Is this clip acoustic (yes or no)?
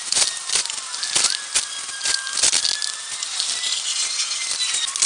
yes